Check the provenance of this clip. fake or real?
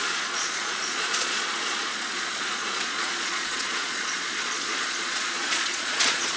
fake